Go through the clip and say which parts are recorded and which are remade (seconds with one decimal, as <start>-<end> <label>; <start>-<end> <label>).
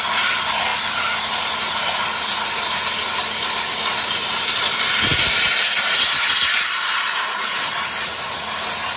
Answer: 0.0-9.0 recorded